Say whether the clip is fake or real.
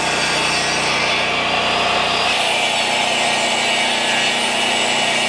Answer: real